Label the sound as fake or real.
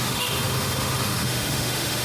fake